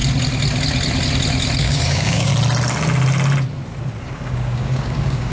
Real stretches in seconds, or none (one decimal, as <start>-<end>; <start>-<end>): 0.0-1.6; 2.3-4.0